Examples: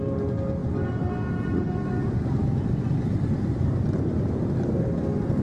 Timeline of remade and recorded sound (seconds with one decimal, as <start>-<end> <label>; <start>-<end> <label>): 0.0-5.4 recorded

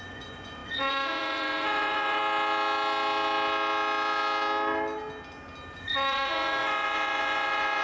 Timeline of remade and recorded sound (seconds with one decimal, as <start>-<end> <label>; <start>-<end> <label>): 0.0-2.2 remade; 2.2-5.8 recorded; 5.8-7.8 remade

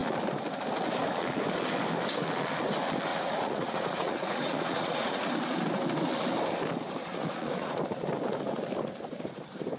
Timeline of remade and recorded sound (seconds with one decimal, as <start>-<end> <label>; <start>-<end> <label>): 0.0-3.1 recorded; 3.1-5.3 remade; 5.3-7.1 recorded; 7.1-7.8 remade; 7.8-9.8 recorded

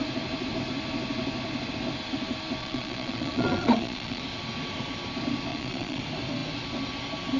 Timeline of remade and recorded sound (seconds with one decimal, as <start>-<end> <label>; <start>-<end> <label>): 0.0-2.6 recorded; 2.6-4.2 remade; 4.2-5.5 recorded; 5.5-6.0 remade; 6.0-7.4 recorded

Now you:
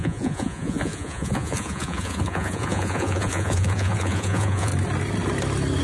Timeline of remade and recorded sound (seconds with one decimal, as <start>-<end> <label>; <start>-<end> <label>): 0.0-4.7 remade; 4.7-5.8 recorded